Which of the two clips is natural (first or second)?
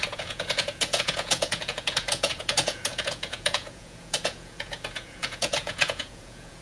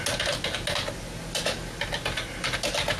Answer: second